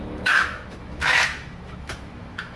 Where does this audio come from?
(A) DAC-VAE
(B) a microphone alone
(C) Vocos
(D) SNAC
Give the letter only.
A